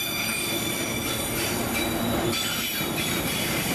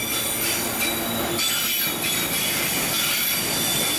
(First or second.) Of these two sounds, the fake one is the first